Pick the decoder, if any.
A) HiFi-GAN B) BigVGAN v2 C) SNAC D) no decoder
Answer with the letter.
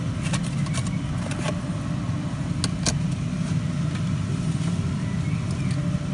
D